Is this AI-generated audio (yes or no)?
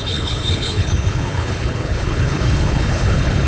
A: yes